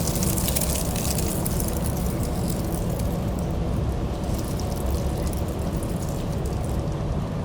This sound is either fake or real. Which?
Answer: real